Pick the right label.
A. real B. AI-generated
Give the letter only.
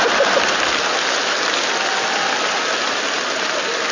A